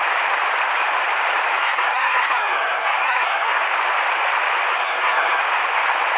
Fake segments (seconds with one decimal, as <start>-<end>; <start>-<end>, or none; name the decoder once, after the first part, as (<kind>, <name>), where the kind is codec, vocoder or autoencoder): 1.6-3.6 (codec, SNAC); 4.7-5.4